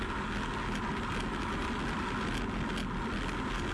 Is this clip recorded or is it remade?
recorded